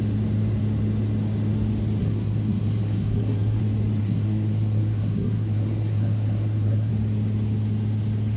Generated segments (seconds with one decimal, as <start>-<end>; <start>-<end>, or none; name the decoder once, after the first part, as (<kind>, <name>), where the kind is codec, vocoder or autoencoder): 2.0-3.6 (codec, SNAC); 4.0-6.9